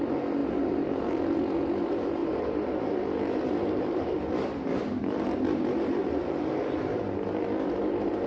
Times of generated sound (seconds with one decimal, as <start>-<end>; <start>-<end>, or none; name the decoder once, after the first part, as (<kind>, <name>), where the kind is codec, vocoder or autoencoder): 0.4-1.2 (vocoder, BigVGAN v2); 2.2-4.3; 6.0-6.5